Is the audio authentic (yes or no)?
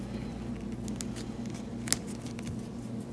yes